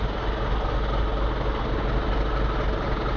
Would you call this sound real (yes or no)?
yes